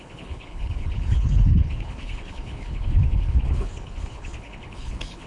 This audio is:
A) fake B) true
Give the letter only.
A